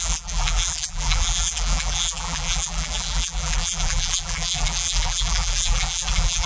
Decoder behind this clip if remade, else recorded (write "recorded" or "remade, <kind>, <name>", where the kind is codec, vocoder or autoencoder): remade, vocoder, BigVGAN v2